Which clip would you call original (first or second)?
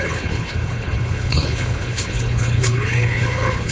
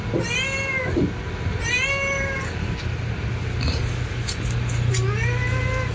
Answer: second